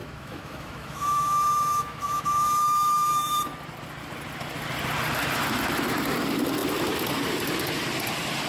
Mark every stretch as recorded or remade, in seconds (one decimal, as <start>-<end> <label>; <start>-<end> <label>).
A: 0.0-3.4 remade; 3.4-8.5 recorded